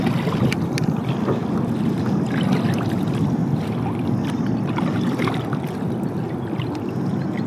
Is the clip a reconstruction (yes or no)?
no